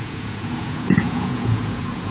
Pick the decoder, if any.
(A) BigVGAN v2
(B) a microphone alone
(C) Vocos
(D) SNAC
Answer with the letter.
C